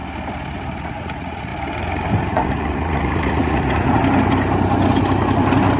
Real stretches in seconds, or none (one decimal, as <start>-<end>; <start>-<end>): 0.0-0.8; 1.5-2.3; 4.0-5.8